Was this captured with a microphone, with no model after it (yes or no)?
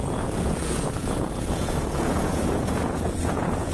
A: no